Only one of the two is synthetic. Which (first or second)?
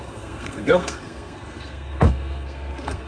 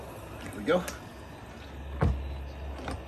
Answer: first